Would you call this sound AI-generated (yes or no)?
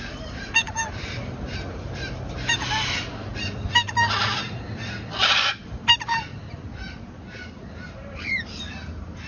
yes